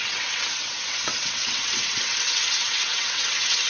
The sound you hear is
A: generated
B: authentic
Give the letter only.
A